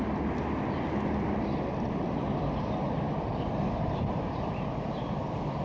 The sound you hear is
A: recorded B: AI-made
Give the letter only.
A